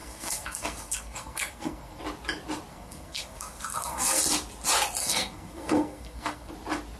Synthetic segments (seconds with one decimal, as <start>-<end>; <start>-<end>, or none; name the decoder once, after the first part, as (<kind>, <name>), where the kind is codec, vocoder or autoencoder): 0.0-2.0 (codec, SNAC); 2.7-4.2; 5.0-6.5